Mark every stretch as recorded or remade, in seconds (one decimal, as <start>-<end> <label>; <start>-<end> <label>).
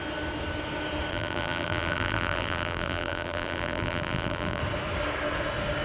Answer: 0.0-1.1 recorded; 1.1-4.6 remade; 4.6-5.8 recorded